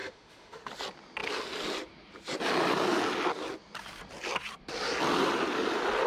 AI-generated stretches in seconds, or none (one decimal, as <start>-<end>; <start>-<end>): 0.0-0.7